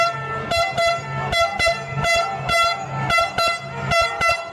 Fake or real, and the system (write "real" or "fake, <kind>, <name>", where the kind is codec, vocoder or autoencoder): real